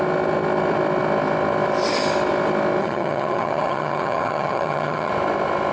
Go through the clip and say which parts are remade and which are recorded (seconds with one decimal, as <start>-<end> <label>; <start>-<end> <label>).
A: 0.0-2.8 recorded; 2.8-5.1 remade; 5.1-5.7 recorded